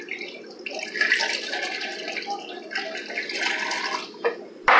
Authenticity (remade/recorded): recorded